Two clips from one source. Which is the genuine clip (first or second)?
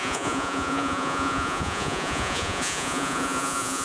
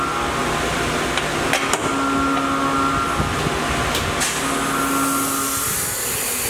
second